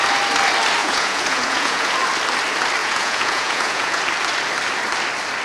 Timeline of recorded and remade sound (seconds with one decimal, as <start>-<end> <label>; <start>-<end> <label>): 0.0-0.8 recorded; 0.8-1.9 remade; 1.9-2.8 recorded; 2.8-4.0 remade; 4.0-5.4 recorded